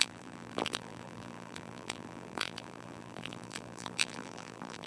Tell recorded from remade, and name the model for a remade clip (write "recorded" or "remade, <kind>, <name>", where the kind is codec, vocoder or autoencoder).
remade, vocoder, BigVGAN v2